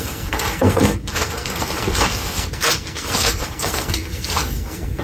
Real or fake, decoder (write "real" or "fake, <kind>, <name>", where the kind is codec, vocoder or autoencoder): fake, codec, SNAC